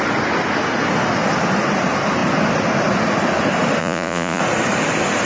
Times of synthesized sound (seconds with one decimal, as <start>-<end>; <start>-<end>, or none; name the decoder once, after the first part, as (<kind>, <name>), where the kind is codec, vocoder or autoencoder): 3.8-4.4 (vocoder, Vocos)